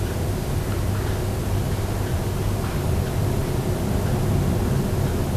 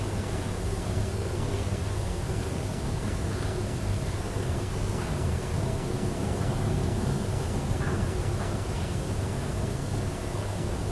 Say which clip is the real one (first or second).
first